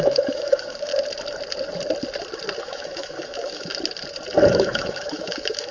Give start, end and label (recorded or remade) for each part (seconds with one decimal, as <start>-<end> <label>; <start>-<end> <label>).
0.0-0.9 remade; 0.9-2.6 recorded; 2.6-3.7 remade; 3.7-4.5 recorded; 4.5-5.7 remade